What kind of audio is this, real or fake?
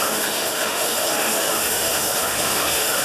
fake